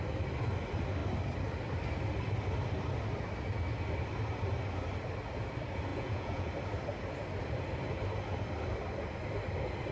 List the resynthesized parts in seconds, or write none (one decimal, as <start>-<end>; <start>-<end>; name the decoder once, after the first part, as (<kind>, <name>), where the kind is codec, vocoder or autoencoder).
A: 5.9-6.5 (vocoder, Vocos)